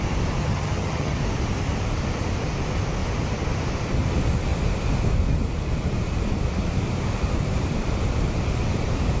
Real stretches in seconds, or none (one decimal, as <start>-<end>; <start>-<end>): 0.0-0.4; 1.2-9.2